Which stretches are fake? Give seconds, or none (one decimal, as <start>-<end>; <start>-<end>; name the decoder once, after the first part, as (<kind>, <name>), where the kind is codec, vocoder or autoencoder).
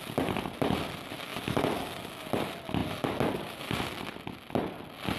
none